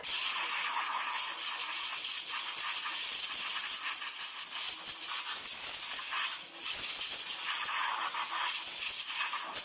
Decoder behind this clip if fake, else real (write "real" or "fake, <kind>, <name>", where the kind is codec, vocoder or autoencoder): real